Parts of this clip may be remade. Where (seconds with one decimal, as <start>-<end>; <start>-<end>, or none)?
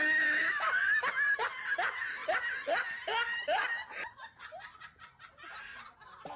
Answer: none